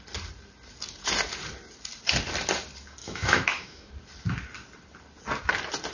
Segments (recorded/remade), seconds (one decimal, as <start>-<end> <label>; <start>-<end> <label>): 0.0-3.0 recorded; 3.0-3.9 remade; 3.9-5.9 recorded